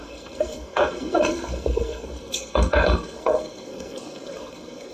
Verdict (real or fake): fake